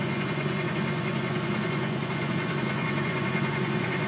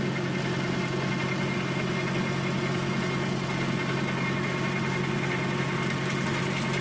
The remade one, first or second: first